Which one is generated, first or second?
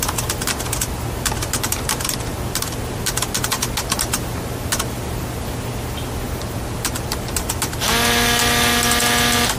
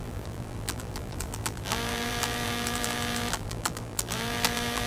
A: second